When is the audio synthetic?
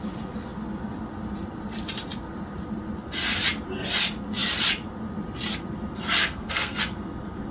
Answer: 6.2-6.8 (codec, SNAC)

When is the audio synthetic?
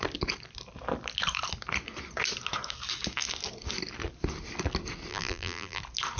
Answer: 5.1-5.8 (vocoder, BigVGAN v2)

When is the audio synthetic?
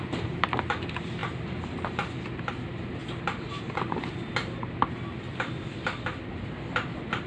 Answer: 0.0-3.0 (vocoder, BigVGAN v2); 5.7-7.3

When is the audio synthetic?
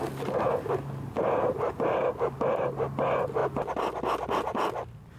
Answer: none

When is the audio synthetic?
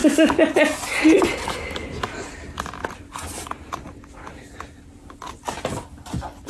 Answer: none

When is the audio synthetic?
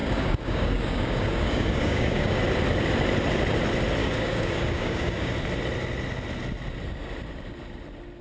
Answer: 0.0-2.4 (codec, DAC); 4.0-5.3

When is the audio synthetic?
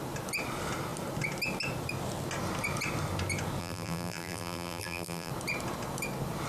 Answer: 3.6-5.3 (vocoder, BigVGAN v2)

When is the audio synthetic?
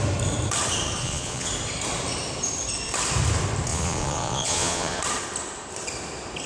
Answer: 1.0-1.5 (vocoder, Vocos); 3.7-5.0